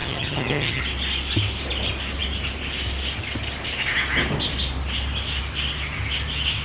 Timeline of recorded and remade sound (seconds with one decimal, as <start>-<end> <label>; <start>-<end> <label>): 0.0-0.8 remade; 0.8-6.6 recorded